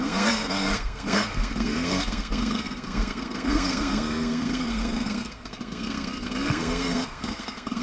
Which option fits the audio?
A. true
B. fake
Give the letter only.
B